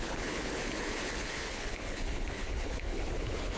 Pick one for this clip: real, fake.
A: fake